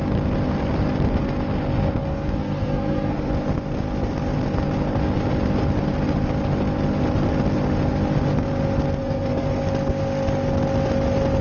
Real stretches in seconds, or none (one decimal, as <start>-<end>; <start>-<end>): 0.0-2.0; 3.3-9.0; 9.6-11.4